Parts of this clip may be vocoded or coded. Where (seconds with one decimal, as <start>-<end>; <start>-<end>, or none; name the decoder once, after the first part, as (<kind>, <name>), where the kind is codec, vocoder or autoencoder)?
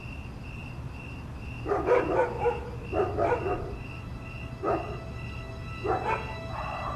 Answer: 0.6-2.1 (vocoder, BigVGAN v2)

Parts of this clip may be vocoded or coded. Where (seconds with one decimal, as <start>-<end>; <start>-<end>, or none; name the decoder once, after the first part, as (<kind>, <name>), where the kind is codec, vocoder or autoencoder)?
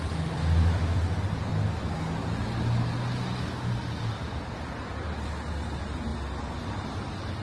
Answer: 0.0-1.5 (vocoder, BigVGAN v2); 5.5-6.1; 6.8-7.4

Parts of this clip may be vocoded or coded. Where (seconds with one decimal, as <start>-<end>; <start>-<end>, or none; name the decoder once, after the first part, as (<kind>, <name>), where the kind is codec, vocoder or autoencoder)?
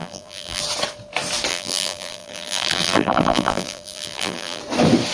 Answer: 0.0-0.6 (vocoder, BigVGAN v2); 1.5-4.6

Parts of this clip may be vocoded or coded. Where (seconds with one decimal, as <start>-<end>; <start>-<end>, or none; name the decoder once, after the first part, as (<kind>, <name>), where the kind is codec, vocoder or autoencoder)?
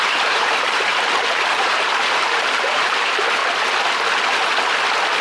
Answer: 0.0-3.4 (vocoder, BigVGAN v2)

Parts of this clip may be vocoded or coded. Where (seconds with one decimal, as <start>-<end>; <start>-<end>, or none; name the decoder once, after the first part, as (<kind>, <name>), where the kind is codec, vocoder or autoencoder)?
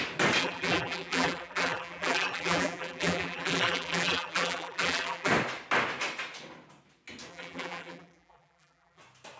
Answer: 0.4-5.3 (vocoder, BigVGAN v2); 7.3-9.0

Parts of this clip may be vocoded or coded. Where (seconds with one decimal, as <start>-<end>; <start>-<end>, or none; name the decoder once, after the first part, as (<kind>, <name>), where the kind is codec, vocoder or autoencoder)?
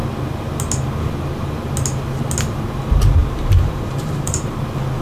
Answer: 3.2-4.6 (vocoder, BigVGAN v2)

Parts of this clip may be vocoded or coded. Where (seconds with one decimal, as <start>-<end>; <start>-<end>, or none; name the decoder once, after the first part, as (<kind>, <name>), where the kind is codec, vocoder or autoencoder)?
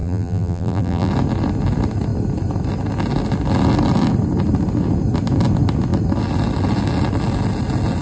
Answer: 0.0-1.1 (vocoder, BigVGAN v2)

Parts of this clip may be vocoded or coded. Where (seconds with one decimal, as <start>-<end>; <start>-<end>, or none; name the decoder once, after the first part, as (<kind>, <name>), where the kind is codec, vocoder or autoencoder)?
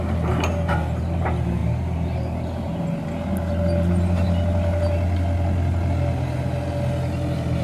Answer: none